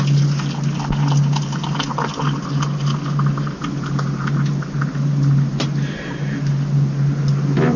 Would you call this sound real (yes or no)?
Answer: yes